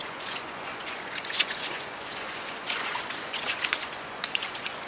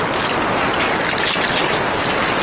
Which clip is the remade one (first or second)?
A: first